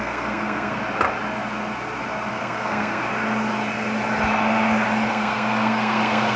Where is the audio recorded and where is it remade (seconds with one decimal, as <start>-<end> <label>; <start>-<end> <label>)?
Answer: 0.0-0.8 remade; 0.8-2.3 recorded; 2.3-3.0 remade; 3.0-5.1 recorded; 5.1-6.4 remade